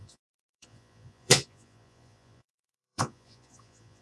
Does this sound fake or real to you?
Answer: fake